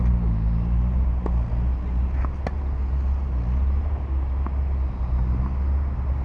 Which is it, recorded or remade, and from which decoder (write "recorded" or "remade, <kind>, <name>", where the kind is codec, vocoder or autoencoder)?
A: recorded